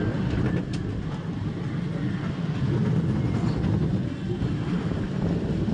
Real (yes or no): yes